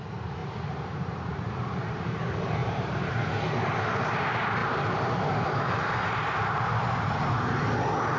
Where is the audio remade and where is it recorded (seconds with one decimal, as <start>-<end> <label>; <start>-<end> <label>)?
0.0-0.4 recorded; 0.4-2.2 remade; 2.2-2.6 recorded; 2.6-3.3 remade; 3.3-4.6 recorded; 4.6-6.7 remade; 6.7-8.2 recorded